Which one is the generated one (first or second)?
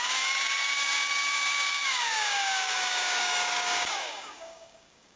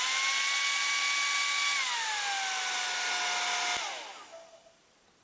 first